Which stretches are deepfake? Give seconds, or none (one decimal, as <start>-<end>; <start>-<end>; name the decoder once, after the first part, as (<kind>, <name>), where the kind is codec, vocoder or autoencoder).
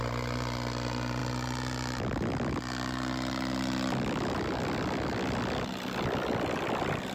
none